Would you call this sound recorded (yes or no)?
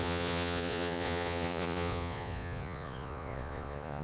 no